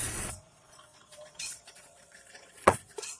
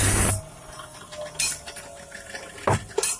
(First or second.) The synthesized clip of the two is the first